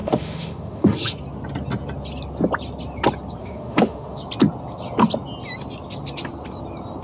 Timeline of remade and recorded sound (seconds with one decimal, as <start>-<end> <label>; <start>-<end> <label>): 0.0-1.1 remade; 1.1-3.4 recorded; 3.4-4.2 remade; 4.2-7.0 recorded